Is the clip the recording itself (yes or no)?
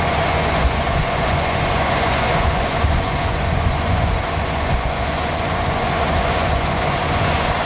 no